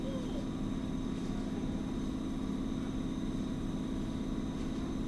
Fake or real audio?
real